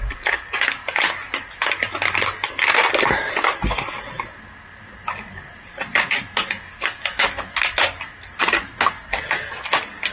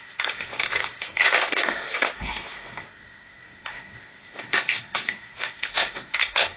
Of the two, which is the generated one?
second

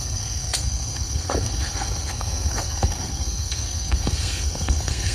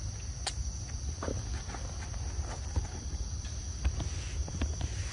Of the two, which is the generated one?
first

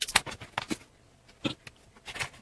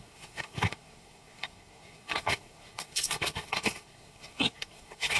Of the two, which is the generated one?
second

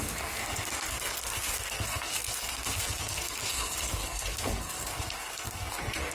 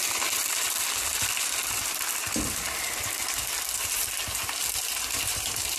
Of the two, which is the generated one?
first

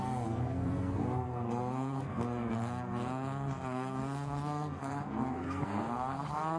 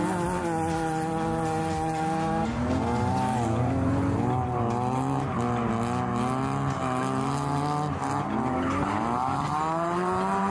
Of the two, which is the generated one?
first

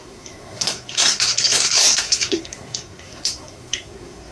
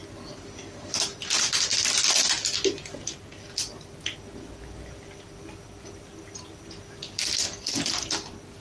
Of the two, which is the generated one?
first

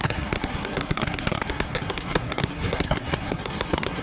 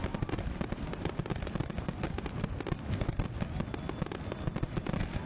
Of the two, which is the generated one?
first